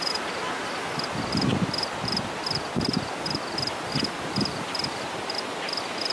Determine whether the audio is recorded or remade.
recorded